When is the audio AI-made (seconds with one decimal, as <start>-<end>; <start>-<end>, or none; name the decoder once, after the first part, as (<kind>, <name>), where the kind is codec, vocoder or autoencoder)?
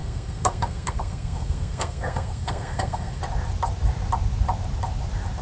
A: 0.0-3.2 (codec, SNAC)